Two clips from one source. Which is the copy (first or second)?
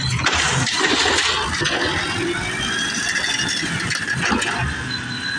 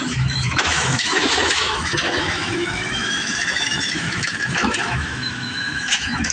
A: second